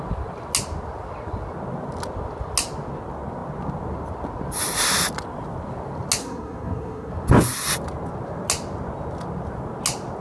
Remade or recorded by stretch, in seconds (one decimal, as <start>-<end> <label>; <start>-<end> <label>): 0.0-6.2 recorded; 6.2-7.1 remade; 7.1-10.2 recorded

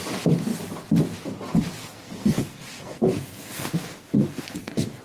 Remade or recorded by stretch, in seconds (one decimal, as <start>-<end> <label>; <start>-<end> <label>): 0.0-1.8 recorded; 1.8-5.0 remade

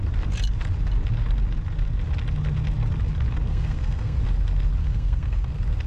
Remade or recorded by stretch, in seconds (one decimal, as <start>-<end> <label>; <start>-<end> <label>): 0.0-3.5 recorded; 3.5-4.2 remade; 4.2-4.8 recorded; 4.8-5.5 remade; 5.5-5.9 recorded

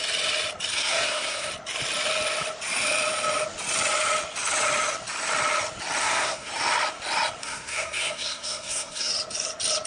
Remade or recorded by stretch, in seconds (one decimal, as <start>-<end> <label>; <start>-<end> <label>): 0.0-0.7 recorded; 0.7-1.5 remade; 1.5-6.0 recorded; 6.0-6.5 remade; 6.5-7.4 recorded; 7.4-9.1 remade; 9.1-9.9 recorded